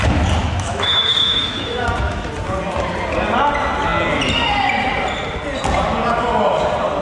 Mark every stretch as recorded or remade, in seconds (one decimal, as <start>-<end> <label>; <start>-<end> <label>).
0.0-0.4 recorded; 0.4-2.3 remade; 2.3-7.0 recorded

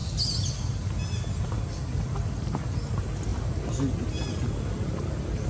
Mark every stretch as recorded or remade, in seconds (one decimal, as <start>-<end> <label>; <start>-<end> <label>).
0.0-5.5 recorded

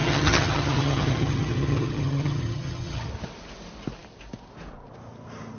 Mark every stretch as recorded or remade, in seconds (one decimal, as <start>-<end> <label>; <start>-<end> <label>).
0.0-3.1 remade; 3.1-5.6 recorded

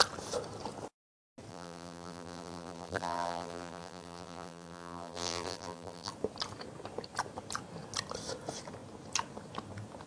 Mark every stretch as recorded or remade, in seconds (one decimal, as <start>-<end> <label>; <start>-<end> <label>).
0.0-1.5 recorded; 1.5-6.1 remade; 6.1-10.1 recorded

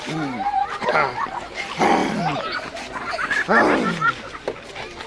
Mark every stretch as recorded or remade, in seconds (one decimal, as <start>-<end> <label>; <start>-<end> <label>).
0.0-5.1 recorded